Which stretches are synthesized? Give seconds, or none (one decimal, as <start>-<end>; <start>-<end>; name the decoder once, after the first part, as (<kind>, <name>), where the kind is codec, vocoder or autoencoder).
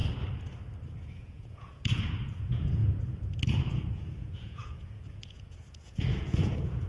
1.0-6.9 (vocoder, Vocos)